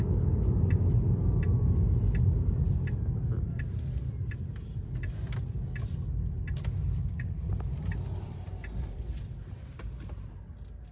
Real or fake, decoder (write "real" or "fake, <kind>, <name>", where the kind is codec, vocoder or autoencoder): real